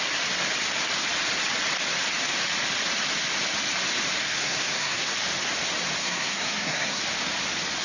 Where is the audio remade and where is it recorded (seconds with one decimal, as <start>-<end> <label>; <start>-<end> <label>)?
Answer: 0.0-4.2 recorded; 4.2-5.1 remade; 5.1-6.0 recorded; 6.0-7.0 remade; 7.0-7.8 recorded